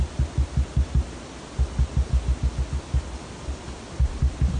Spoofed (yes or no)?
no